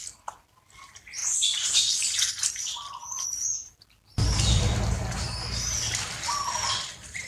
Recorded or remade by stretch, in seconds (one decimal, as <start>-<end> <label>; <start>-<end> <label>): 0.0-1.2 remade; 1.2-2.0 recorded; 2.0-7.3 remade